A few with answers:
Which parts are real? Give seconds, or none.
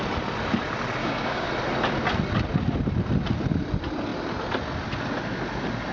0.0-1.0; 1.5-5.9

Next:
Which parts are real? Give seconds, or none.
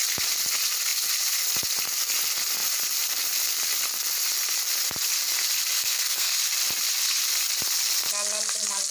0.0-5.8; 6.4-8.9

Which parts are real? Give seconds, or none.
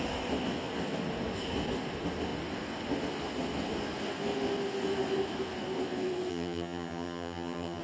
0.0-6.3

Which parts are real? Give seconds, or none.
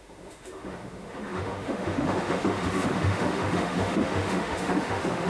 none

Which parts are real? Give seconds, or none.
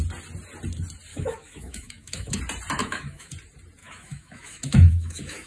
0.0-1.1; 2.4-2.8; 3.3-3.8